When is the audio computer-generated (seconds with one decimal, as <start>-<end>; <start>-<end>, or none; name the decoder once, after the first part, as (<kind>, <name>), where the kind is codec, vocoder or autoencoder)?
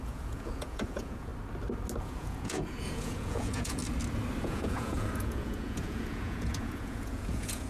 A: 0.0-1.3 (vocoder, Vocos); 2.0-3.8; 4.4-7.7